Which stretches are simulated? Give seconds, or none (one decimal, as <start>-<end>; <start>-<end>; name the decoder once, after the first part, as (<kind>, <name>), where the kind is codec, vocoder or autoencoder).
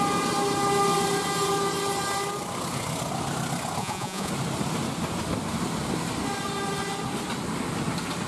3.8-4.3 (vocoder, Vocos)